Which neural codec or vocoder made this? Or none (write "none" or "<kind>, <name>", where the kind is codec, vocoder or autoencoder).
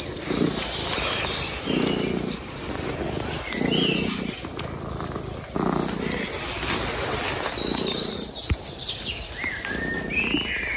none